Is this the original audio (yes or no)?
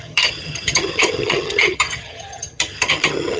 no